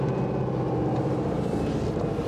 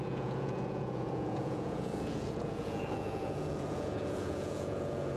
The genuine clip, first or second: first